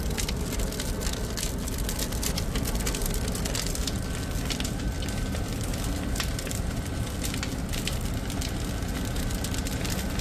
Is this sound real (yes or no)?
yes